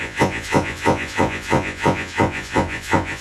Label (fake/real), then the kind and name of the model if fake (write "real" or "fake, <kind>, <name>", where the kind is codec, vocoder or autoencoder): fake, vocoder, Vocos